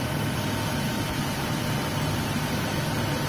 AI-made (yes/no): yes